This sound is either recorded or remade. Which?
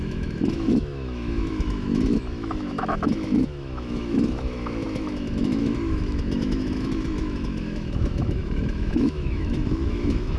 remade